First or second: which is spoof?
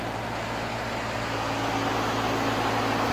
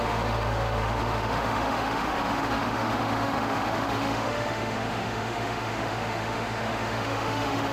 second